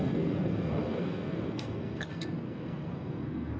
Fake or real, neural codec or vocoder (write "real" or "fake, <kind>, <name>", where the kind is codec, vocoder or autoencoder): fake, codec, SNAC